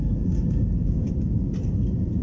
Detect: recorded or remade recorded